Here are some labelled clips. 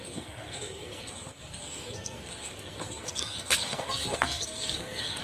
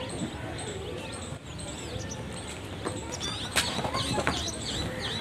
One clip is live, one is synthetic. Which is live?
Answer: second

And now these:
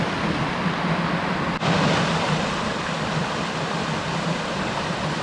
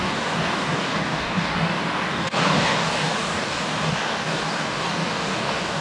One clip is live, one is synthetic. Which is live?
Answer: first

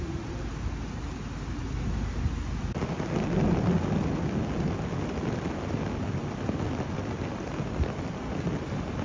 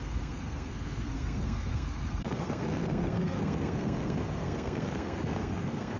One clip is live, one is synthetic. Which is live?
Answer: first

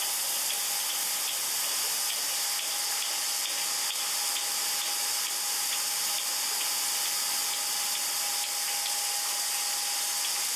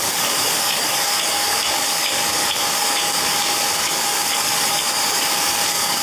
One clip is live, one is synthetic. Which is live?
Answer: first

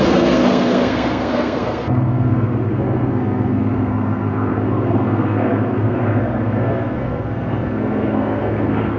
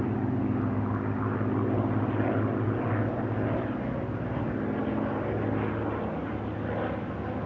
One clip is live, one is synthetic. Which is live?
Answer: second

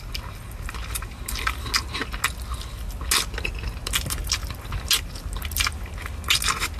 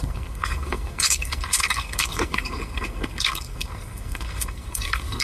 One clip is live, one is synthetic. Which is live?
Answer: first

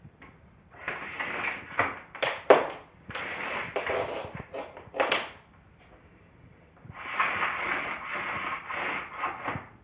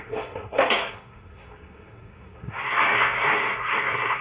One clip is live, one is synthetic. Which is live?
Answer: first